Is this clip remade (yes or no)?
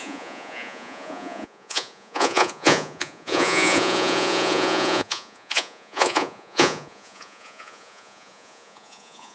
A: yes